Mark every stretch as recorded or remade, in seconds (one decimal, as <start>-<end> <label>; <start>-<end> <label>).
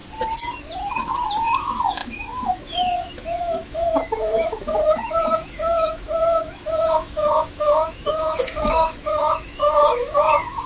0.0-1.4 recorded; 1.4-10.7 remade